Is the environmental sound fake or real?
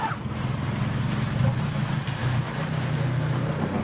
real